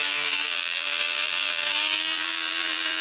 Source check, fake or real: fake